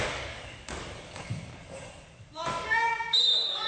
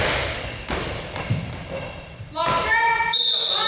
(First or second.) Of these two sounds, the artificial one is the first